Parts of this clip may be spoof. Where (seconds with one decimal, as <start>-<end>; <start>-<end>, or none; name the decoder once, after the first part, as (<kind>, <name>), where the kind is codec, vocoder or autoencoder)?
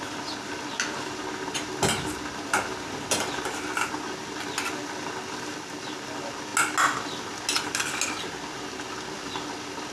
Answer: none